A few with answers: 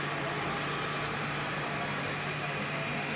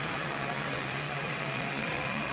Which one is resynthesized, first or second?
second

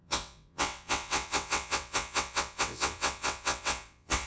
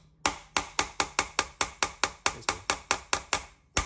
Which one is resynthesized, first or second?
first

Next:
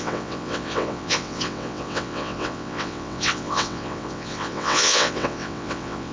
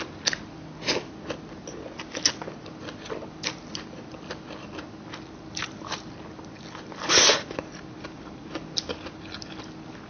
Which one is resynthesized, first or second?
first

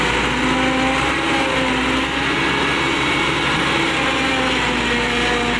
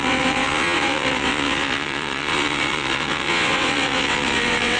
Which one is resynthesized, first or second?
second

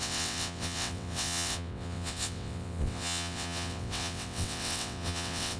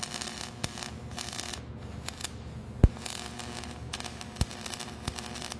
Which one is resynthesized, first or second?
first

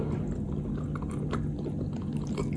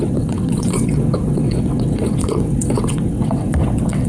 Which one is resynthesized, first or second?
second